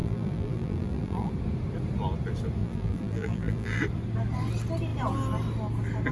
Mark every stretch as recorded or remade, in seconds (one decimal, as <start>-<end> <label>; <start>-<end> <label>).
0.0-1.3 remade; 1.3-2.6 recorded; 2.6-3.8 remade; 3.8-6.1 recorded